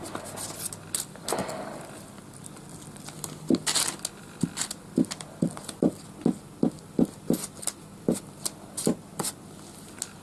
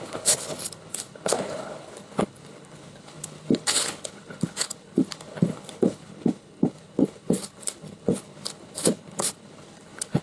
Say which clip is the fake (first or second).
second